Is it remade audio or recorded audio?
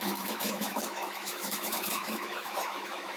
remade